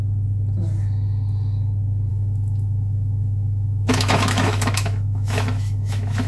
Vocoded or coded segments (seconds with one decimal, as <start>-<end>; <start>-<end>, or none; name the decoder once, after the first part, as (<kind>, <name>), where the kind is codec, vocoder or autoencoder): 2.1-6.3 (autoencoder, DAC-VAE)